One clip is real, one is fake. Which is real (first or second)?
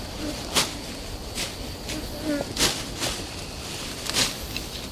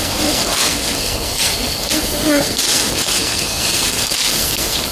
first